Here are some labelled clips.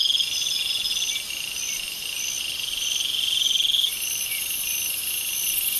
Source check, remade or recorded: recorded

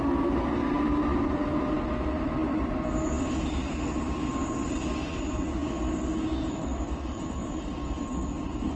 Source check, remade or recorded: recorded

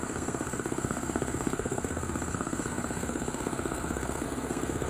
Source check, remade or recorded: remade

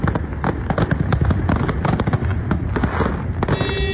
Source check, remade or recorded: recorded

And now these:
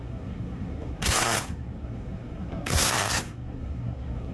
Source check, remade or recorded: remade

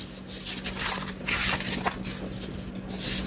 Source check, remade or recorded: recorded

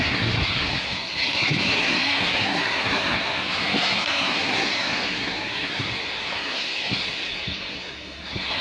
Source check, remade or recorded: remade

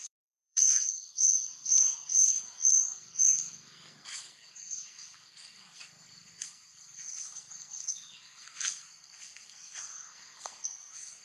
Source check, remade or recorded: remade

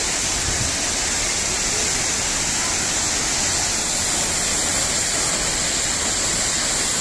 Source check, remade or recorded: recorded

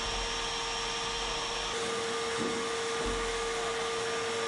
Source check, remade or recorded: recorded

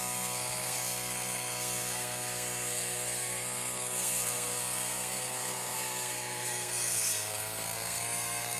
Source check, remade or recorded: remade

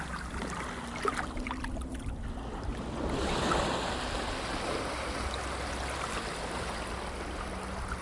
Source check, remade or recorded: recorded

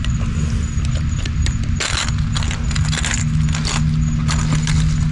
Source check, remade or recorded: recorded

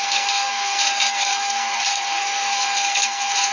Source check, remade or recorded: remade